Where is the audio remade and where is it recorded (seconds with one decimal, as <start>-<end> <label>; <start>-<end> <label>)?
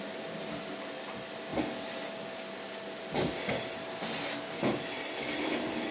0.0-5.9 recorded